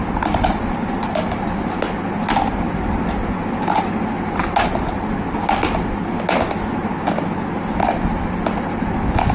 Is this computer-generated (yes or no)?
no